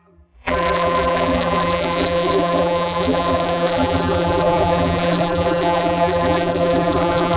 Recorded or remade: remade